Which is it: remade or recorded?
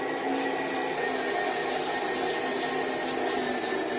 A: recorded